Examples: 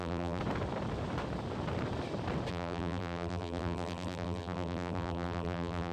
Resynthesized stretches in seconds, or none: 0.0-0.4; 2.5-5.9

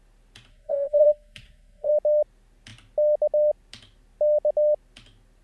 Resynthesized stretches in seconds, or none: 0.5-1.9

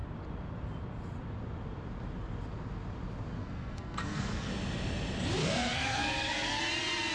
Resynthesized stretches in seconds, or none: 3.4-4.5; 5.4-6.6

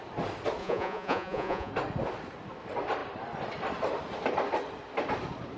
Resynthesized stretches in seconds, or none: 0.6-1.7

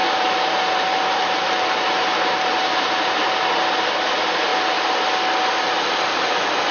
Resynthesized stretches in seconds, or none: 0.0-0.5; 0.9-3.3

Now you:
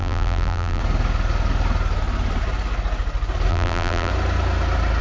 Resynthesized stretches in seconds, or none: 0.0-0.8; 3.5-4.1

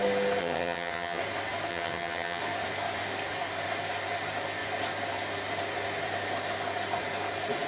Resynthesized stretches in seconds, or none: 0.4-1.2; 1.7-2.4

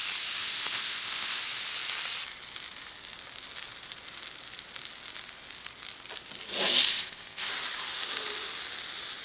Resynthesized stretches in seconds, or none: 0.4-1.4; 6.9-7.5